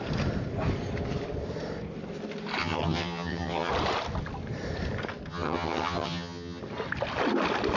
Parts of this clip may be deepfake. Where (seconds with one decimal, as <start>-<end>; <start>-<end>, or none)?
2.6-3.7; 5.3-6.6